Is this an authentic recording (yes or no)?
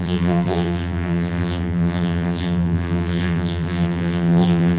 no